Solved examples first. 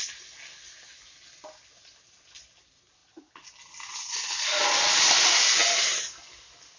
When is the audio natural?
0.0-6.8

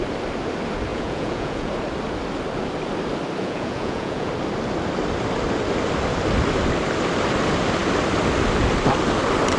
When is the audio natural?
0.0-0.9; 1.7-3.4; 4.3-9.6

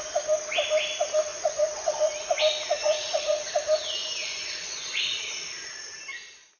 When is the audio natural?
0.0-1.3; 2.4-2.8; 3.5-4.0; 5.3-6.6

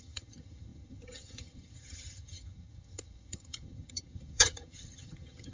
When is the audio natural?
none